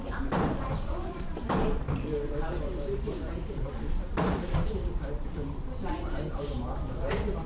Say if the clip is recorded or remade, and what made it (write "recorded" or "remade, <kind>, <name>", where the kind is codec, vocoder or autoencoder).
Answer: remade, vocoder, BigVGAN v2